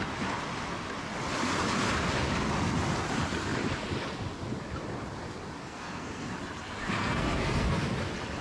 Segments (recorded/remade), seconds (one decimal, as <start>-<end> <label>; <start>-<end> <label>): 0.0-5.6 recorded; 5.6-6.3 remade; 6.3-7.0 recorded; 7.0-7.8 remade; 7.8-8.4 recorded